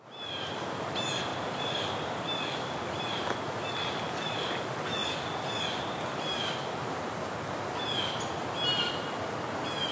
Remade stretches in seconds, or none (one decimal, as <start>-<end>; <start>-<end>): 1.3-3.0